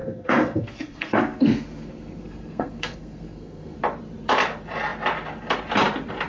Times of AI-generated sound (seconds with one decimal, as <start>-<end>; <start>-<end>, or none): 0.0-3.8